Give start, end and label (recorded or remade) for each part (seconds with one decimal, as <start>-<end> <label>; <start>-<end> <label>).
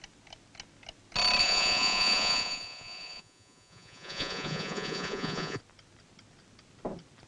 0.0-1.4 recorded; 1.4-5.6 remade; 5.6-7.3 recorded